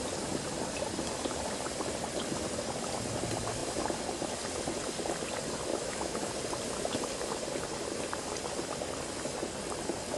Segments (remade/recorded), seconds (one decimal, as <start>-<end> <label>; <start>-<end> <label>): 0.0-5.7 recorded; 5.7-6.3 remade; 6.3-10.2 recorded